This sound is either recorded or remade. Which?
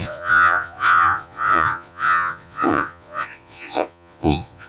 remade